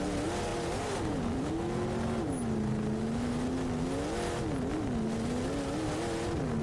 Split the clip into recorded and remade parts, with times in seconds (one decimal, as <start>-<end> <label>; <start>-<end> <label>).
0.0-0.5 recorded; 0.5-1.5 remade; 1.5-6.6 recorded